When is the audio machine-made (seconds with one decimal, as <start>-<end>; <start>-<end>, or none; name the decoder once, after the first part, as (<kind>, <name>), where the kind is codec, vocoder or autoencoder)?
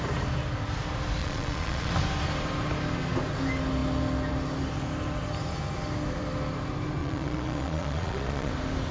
1.2-1.9 (vocoder, Vocos); 7.0-8.5